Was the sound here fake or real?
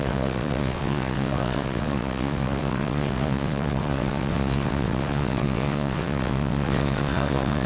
fake